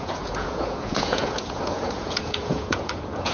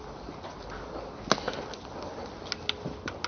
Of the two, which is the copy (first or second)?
first